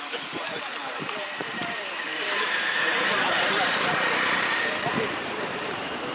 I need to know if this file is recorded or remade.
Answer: remade